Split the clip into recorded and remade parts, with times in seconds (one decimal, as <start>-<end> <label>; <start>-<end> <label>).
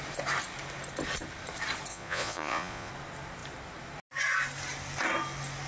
0.0-1.9 recorded; 1.9-2.9 remade; 2.9-5.7 recorded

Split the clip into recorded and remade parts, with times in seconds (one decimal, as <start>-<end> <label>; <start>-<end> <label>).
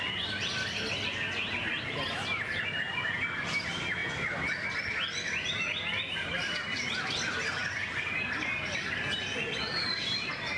0.0-10.6 recorded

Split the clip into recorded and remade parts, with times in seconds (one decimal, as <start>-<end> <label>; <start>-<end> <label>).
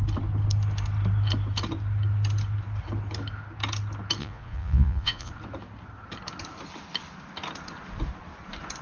0.0-4.2 recorded; 4.2-5.3 remade; 5.3-8.8 recorded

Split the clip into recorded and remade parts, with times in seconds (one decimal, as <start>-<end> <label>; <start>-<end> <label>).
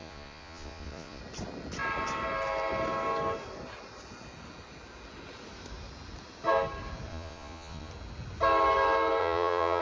0.0-1.2 remade; 1.2-7.1 recorded; 7.1-7.9 remade; 7.9-9.2 recorded; 9.2-9.8 remade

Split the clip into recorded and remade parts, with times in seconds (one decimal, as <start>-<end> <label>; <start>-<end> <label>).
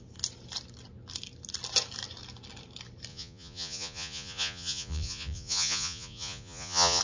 0.0-3.1 recorded; 3.1-7.0 remade